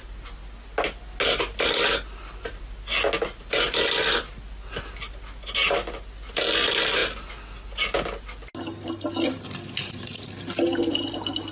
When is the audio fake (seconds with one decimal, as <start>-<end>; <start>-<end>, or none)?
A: none